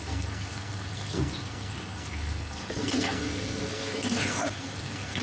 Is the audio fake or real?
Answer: fake